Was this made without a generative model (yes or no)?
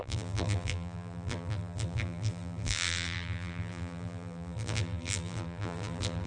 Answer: no